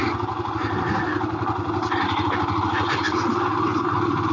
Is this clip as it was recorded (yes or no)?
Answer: yes